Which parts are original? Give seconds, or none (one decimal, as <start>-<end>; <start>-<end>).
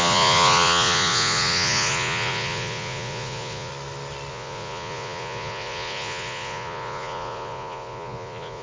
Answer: 3.7-4.3